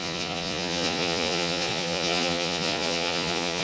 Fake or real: fake